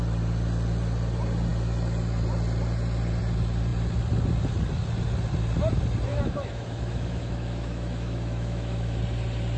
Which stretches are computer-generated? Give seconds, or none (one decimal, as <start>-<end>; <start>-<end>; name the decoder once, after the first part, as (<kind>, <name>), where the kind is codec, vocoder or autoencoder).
6.1-9.0 (autoencoder, DAC-VAE)